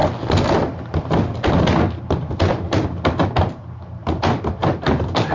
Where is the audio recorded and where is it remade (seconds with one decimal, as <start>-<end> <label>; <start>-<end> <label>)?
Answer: 0.0-5.3 recorded